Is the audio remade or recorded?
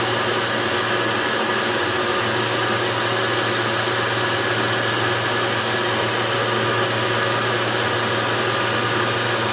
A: recorded